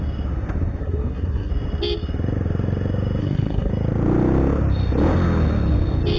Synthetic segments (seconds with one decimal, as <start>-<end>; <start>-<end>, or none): 0.8-1.5; 3.2-3.7